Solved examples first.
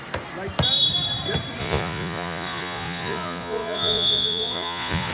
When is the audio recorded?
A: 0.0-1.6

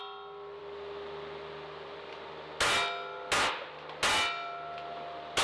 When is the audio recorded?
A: 0.0-5.4

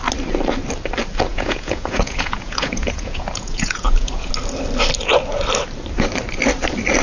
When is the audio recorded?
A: 0.0-1.3; 4.3-7.0